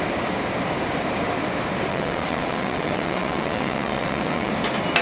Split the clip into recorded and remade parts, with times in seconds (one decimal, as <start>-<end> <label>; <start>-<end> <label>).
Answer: 0.0-1.9 recorded; 1.9-4.5 remade; 4.5-5.0 recorded